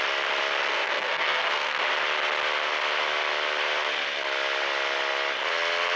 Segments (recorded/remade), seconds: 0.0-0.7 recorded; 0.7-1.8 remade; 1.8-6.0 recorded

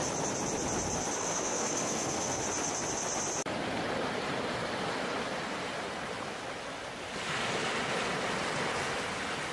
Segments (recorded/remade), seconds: 0.0-1.2 recorded; 1.2-2.4 remade; 2.4-9.5 recorded

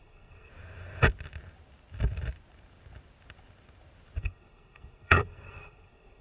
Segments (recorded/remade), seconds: 0.0-0.5 remade; 0.5-4.2 recorded; 4.2-6.2 remade

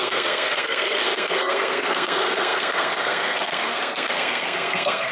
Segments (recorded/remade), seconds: 0.0-5.1 remade

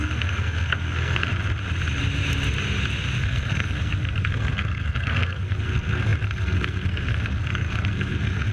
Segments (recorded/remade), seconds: 0.0-1.3 remade; 1.3-3.2 recorded; 3.2-8.5 remade

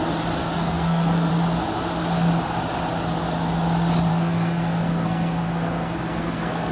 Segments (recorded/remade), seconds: 0.0-0.4 recorded; 0.4-1.3 remade; 1.3-4.1 recorded; 4.1-6.7 remade